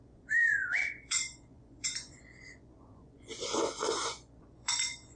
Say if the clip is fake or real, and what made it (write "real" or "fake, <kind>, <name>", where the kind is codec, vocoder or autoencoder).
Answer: fake, vocoder, Vocos